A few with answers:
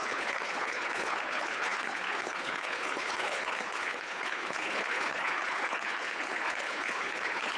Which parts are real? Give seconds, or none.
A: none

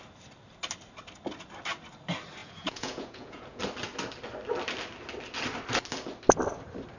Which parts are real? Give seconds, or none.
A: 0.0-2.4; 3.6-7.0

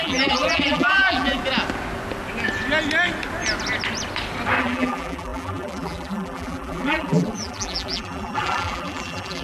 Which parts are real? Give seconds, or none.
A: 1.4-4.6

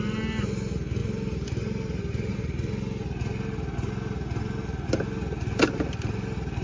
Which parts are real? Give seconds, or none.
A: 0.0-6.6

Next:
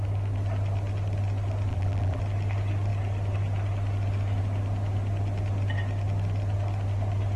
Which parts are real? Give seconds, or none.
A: 0.0-1.7; 2.2-7.4